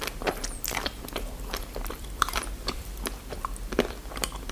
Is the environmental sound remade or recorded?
remade